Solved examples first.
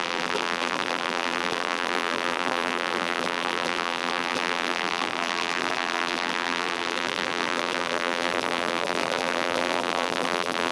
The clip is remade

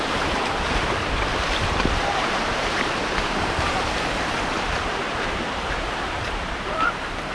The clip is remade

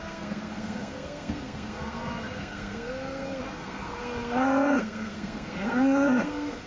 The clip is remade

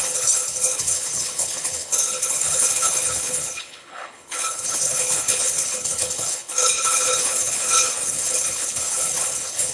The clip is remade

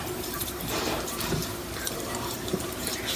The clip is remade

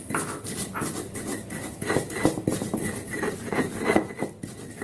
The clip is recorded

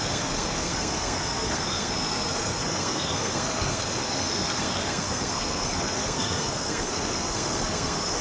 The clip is remade